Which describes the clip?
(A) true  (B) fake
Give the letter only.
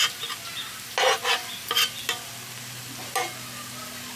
A